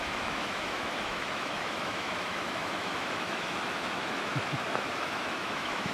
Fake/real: fake